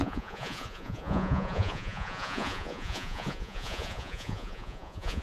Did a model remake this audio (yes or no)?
yes